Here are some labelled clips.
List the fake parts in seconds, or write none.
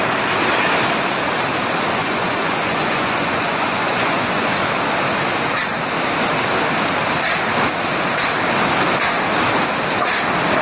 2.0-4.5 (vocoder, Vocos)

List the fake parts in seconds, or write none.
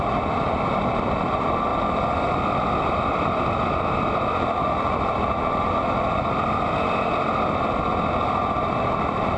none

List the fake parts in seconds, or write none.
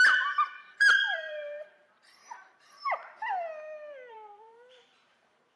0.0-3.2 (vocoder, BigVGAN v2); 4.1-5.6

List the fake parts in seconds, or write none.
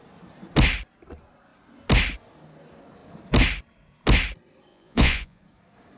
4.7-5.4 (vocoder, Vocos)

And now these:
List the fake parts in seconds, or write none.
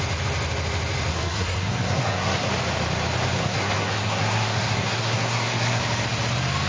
1.1-2.5 (codec, SNAC); 3.4-5.8